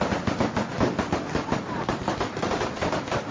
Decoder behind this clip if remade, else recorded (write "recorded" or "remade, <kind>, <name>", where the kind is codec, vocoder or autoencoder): recorded